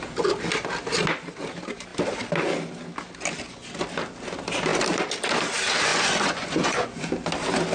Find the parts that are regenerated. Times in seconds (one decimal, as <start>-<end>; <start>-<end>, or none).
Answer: 5.9-7.1